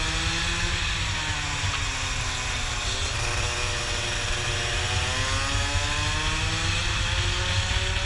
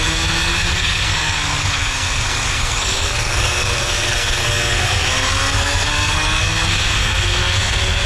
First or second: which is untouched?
first